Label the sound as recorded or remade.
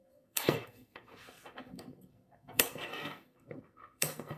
remade